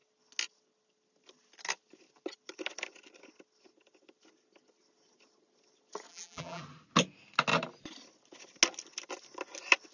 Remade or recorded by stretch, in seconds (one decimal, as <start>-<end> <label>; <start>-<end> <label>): 0.0-6.1 recorded; 6.1-6.6 remade; 6.6-9.9 recorded